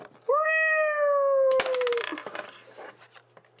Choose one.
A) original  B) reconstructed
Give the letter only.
A